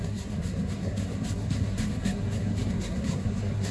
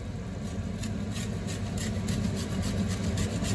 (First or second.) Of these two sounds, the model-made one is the first